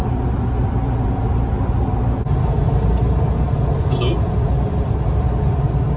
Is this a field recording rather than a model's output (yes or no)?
yes